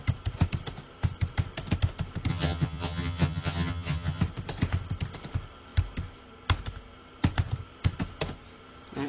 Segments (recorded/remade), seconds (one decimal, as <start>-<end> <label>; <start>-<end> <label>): 0.0-2.3 recorded; 2.3-4.2 remade; 4.2-9.1 recorded